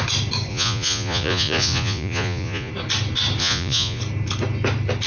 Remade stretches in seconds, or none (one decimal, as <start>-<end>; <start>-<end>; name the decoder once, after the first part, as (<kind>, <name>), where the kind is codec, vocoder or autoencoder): 0.5-2.7 (vocoder, Vocos); 3.4-4.0